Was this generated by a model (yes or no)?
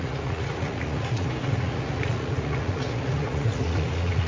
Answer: yes